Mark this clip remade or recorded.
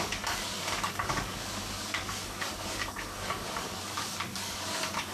remade